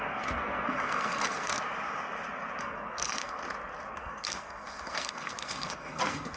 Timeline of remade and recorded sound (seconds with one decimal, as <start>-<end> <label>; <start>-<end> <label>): 0.0-1.5 remade; 1.5-2.6 recorded; 2.6-3.4 remade; 3.4-3.9 recorded; 3.9-6.4 remade